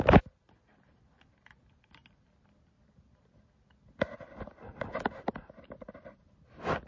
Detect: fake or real real